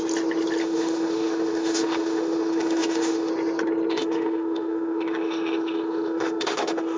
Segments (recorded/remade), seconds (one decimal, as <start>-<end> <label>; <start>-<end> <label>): 0.0-0.6 recorded; 0.6-3.3 remade; 3.3-3.9 recorded; 3.9-7.0 remade